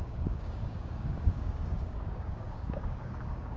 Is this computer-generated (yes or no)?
yes